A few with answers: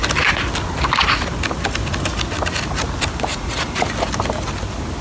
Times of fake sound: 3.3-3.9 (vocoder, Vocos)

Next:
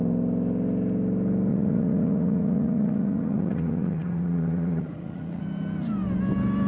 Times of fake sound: 1.5-5.4 (vocoder, Vocos)

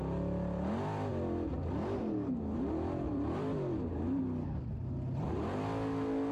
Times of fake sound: 1.1-4.2 (vocoder, BigVGAN v2)

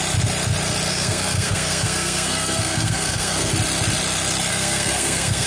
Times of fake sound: 0.9-3.5 (codec, SNAC); 4.5-5.5

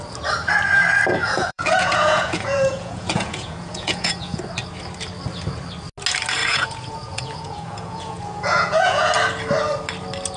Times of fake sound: 1.2-4.4 (vocoder, Vocos); 6.4-9.1

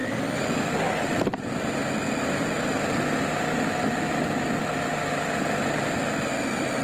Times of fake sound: none